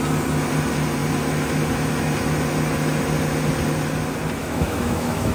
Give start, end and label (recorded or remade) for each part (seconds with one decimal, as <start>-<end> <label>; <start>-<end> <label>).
0.0-4.4 recorded; 4.4-5.3 remade